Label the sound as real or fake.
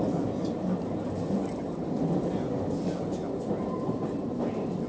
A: real